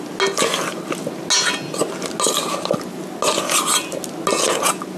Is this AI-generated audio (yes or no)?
no